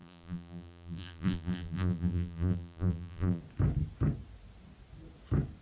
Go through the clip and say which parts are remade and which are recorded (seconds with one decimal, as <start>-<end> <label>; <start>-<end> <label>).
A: 0.0-3.4 remade; 3.4-5.6 recorded